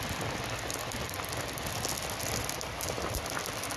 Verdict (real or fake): real